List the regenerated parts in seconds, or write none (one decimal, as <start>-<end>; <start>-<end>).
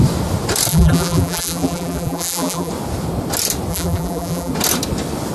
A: 0.7-2.7; 3.7-4.5